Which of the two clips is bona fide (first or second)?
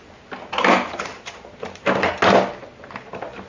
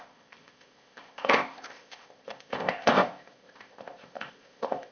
first